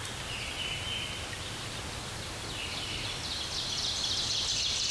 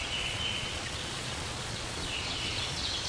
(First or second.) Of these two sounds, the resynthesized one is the second